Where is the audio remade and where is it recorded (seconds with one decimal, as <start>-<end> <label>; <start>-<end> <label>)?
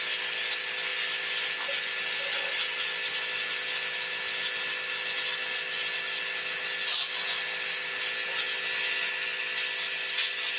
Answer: 0.0-10.6 recorded